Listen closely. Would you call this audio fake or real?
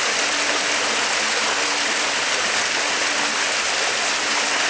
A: real